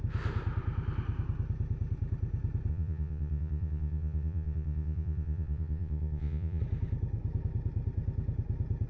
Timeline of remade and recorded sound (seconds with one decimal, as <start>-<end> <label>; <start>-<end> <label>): 0.0-2.7 recorded; 2.7-6.6 remade; 6.6-8.9 recorded